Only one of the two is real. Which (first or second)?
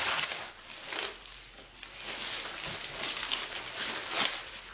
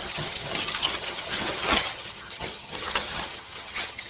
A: first